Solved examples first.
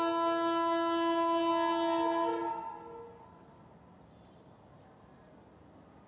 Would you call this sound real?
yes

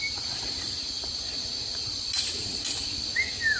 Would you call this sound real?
yes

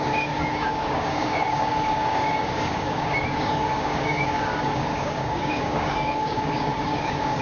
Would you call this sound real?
no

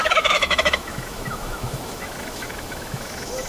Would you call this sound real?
no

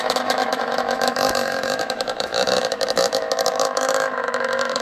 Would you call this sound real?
no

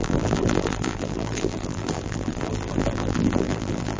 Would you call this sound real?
no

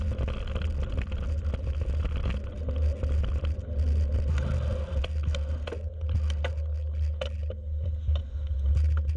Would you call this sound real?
yes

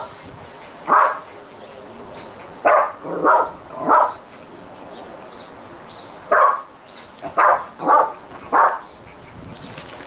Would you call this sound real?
no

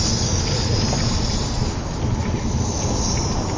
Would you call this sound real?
yes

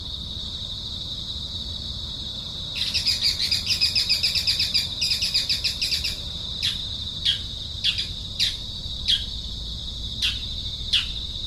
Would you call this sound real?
yes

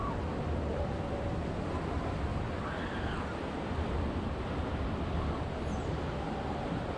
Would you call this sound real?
yes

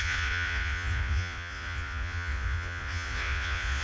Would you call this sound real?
no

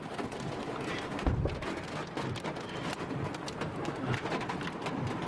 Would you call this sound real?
yes